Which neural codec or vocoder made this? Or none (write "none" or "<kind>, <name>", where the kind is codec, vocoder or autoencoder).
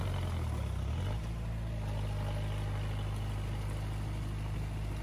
none